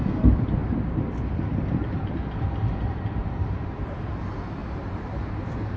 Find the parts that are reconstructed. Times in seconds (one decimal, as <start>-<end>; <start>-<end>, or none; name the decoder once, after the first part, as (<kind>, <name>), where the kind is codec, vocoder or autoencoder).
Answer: 0.6-4.1 (vocoder, BigVGAN v2); 4.6-5.8